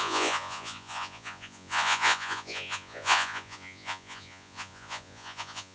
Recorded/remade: remade